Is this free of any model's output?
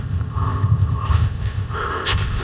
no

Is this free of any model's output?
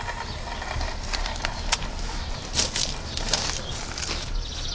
yes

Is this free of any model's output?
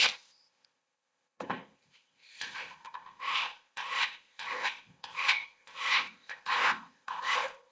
no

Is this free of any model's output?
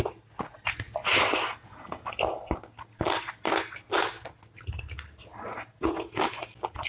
yes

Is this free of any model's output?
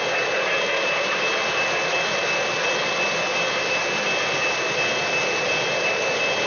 yes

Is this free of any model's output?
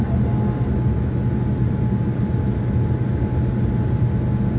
yes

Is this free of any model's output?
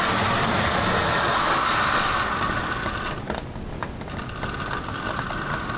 yes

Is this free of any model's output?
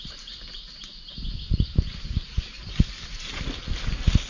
yes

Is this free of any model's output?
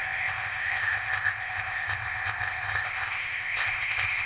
no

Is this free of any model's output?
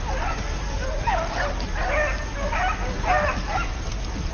yes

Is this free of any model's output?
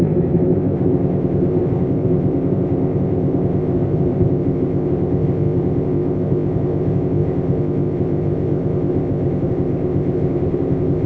no